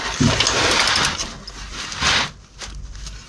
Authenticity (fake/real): real